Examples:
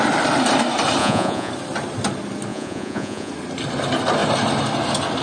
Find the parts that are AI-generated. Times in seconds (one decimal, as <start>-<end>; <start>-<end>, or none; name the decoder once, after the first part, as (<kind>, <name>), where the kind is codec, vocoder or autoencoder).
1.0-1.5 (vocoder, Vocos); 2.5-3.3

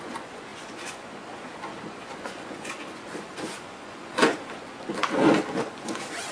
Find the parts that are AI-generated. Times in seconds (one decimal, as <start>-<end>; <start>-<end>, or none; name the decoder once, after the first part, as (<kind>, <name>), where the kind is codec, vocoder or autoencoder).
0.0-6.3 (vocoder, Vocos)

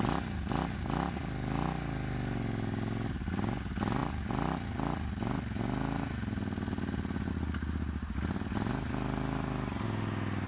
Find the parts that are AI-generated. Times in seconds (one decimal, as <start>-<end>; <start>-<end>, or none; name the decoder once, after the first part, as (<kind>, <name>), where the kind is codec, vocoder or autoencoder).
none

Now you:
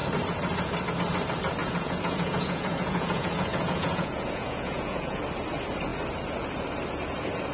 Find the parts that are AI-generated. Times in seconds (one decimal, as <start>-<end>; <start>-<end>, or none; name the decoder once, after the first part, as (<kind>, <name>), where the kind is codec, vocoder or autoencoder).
1.6-5.2 (vocoder, Vocos)

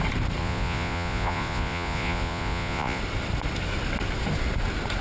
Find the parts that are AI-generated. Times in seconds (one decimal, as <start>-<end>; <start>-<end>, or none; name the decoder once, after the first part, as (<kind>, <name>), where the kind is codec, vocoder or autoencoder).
0.4-3.0 (vocoder, Vocos)

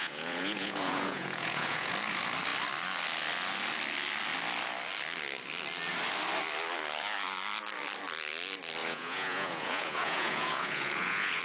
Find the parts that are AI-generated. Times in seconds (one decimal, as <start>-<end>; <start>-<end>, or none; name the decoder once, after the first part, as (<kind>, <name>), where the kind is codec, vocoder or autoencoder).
0.0-1.9 (vocoder, Vocos); 8.8-11.4

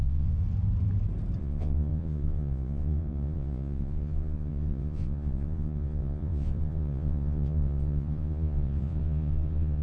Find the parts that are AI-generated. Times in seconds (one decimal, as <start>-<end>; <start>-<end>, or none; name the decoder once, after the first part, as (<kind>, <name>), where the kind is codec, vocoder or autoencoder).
0.0-0.4 (vocoder, Vocos); 1.4-9.8